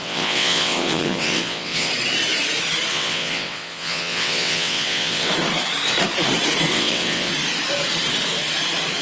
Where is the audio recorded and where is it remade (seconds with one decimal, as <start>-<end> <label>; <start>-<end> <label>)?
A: 0.0-1.9 remade; 1.9-2.9 recorded; 2.9-5.3 remade; 5.3-6.7 recorded; 6.7-7.3 remade; 7.3-9.0 recorded